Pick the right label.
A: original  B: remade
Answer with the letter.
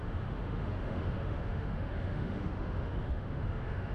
B